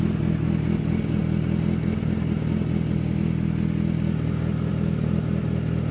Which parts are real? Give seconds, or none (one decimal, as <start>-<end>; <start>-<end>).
0.0-5.9